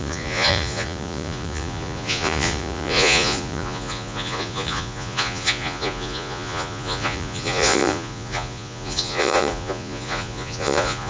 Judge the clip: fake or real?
fake